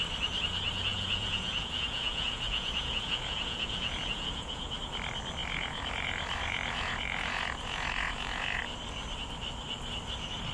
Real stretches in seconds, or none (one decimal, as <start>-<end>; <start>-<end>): 0.0-0.9; 4.8-5.4; 8.6-10.5